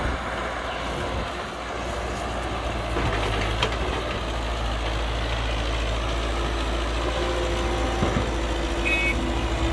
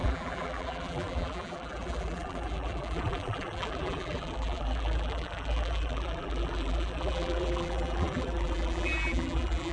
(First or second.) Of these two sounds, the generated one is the second